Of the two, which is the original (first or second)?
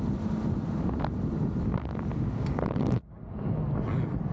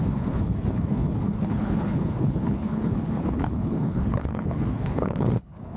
first